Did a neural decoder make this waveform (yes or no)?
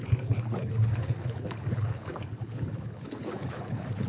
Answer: yes